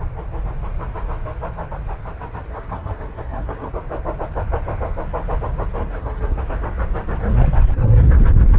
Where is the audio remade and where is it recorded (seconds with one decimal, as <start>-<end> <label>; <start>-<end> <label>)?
0.0-2.5 recorded; 2.5-3.7 remade; 3.7-5.8 recorded; 5.8-6.4 remade; 6.4-7.2 recorded; 7.2-8.0 remade; 8.0-8.6 recorded